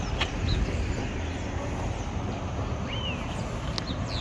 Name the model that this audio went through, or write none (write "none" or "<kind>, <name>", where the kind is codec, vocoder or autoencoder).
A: none